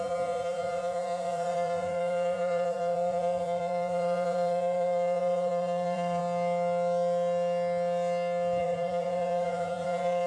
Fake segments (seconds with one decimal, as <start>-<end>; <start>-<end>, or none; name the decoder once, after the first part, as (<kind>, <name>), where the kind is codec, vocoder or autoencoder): 0.0-6.2 (vocoder, Vocos); 8.6-10.3